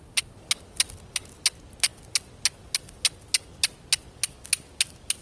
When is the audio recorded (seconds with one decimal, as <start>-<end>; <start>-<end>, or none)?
0.0-5.2